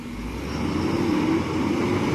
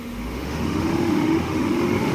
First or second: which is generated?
second